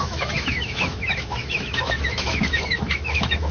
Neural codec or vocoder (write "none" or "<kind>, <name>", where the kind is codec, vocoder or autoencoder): autoencoder, DAC-VAE